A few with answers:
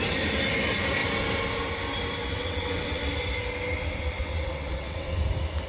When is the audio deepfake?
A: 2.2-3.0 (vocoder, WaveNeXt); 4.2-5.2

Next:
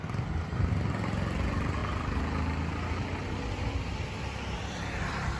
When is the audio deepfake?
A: none

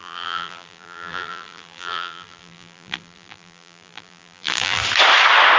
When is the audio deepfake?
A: 0.0-4.8 (vocoder, BigVGAN v2)

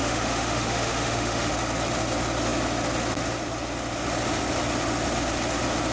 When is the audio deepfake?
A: 0.0-1.5 (autoencoder, DAC-VAE)

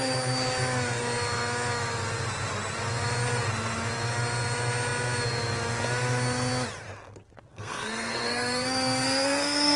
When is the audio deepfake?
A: 7.4-9.8 (codec, SNAC)

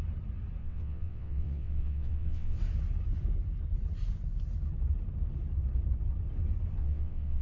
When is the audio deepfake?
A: 0.6-2.6 (vocoder, WaveNeXt); 6.8-7.4

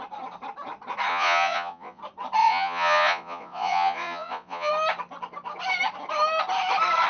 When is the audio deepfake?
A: 1.1-2.0 (vocoder, Vocos); 2.4-4.7